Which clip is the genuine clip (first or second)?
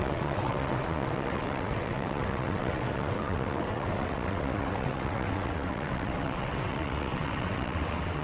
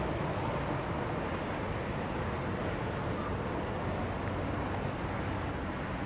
second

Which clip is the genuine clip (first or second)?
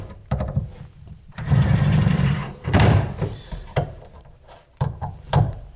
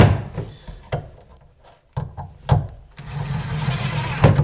second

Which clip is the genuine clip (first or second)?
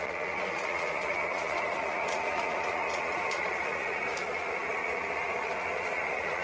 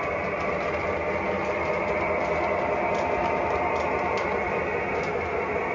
second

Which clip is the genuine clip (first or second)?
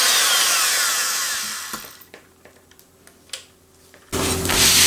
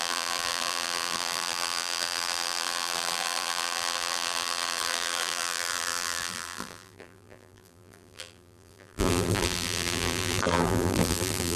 first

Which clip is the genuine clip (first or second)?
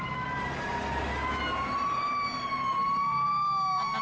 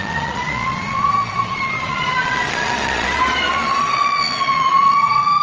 first